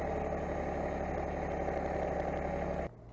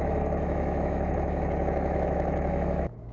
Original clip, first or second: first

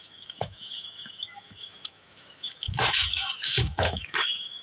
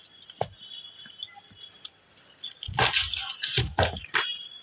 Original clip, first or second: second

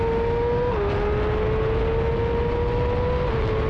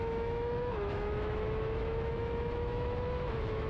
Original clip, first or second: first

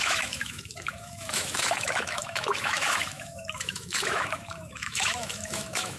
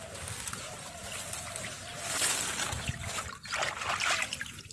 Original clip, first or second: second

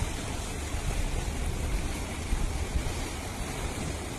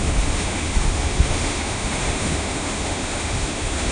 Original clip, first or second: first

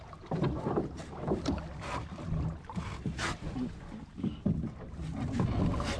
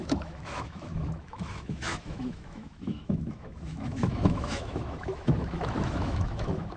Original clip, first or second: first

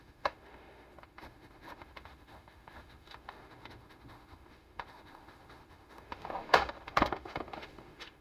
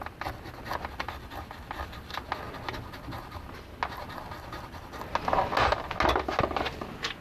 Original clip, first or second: second